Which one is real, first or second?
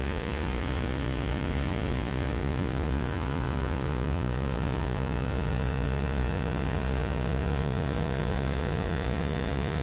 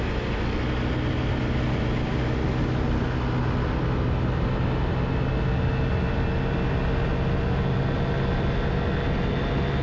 second